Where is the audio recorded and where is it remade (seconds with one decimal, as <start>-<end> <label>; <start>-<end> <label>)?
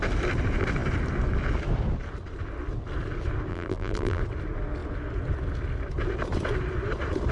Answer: 0.0-3.5 recorded; 3.5-4.2 remade; 4.2-7.3 recorded